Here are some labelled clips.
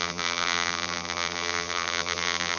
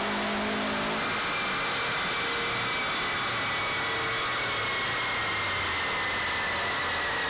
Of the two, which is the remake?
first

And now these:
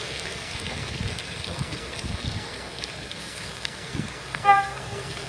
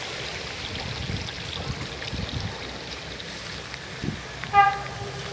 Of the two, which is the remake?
first